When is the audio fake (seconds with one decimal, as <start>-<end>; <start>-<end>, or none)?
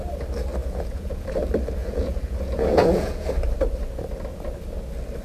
0.6-1.3; 1.8-3.3